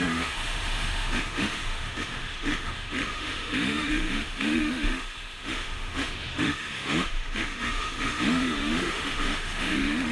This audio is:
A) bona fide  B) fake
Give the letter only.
B